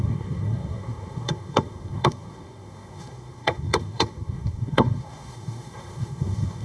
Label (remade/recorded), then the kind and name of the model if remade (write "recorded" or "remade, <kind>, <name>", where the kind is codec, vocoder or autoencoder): remade, codec, SNAC